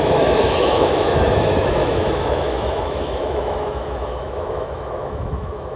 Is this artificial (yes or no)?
yes